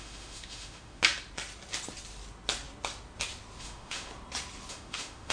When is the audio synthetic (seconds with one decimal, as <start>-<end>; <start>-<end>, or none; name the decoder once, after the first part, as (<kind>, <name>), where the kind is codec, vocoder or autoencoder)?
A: 0.0-1.0 (autoencoder, DAC-VAE); 3.6-4.1; 4.7-5.3